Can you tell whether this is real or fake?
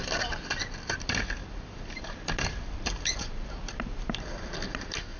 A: fake